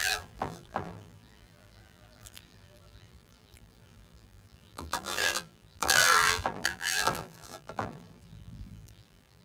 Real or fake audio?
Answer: fake